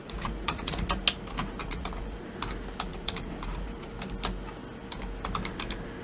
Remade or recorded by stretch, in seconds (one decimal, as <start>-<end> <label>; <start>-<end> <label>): 0.0-1.0 remade; 1.0-1.6 recorded; 1.6-2.3 remade; 2.3-2.9 recorded; 2.9-3.9 remade; 3.9-6.0 recorded